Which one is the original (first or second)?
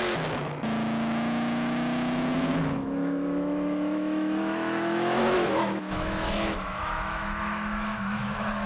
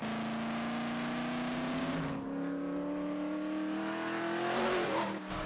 second